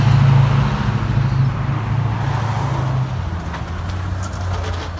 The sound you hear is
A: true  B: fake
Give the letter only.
A